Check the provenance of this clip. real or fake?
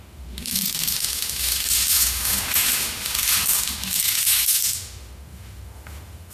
fake